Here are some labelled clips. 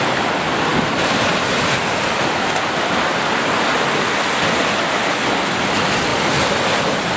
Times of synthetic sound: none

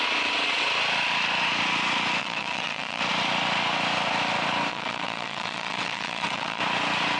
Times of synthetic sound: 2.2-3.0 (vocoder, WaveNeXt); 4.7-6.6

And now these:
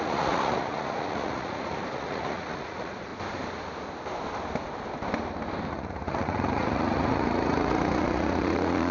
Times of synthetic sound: 0.0-3.1 (vocoder, Vocos); 5.7-8.9